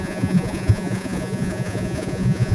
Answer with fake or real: fake